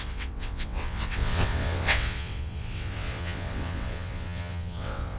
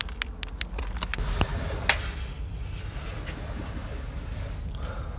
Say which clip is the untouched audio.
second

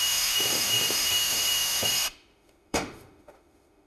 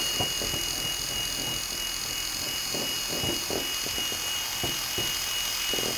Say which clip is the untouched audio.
second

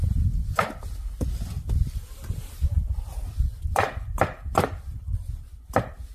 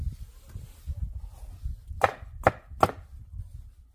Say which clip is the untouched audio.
second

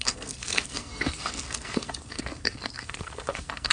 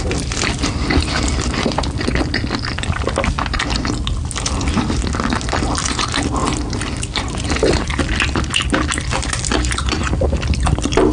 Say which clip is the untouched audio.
second